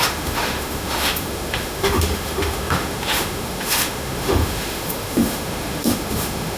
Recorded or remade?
remade